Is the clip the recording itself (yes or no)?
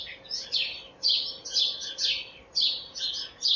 yes